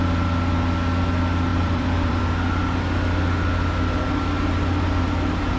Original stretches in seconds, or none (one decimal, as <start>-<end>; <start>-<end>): 0.0-1.5; 2.2-5.6